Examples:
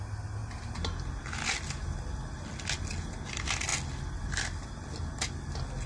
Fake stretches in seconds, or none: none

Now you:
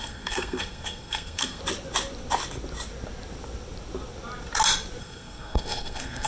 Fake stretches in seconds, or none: 0.0-1.6 (codec, SNAC); 5.0-6.3